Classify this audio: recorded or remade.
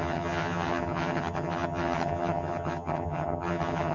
remade